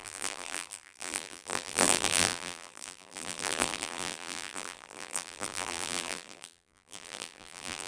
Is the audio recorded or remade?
remade